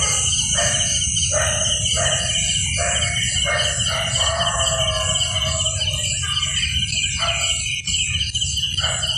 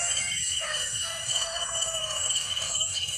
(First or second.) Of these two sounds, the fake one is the second